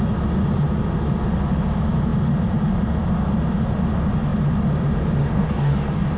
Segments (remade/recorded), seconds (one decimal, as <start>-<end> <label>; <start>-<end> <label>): 0.0-5.2 recorded; 5.2-6.2 remade